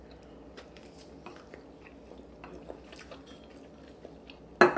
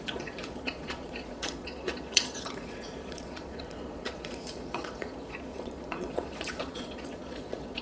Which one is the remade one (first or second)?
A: second